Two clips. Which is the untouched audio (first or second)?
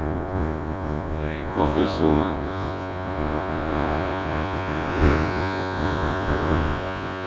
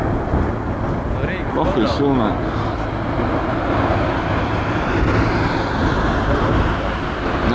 second